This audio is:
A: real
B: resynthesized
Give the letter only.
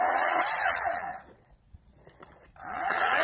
B